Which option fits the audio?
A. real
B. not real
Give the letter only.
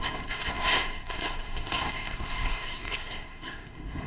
B